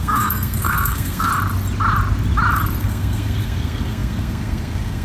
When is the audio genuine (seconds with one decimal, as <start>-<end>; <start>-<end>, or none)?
1.3-2.8